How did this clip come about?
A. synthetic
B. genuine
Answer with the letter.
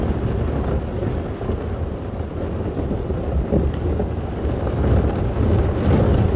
B